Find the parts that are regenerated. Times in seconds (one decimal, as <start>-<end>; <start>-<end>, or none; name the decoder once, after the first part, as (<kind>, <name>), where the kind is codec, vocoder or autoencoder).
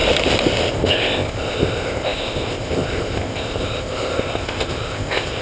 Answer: 0.7-5.4 (codec, ZipCodec)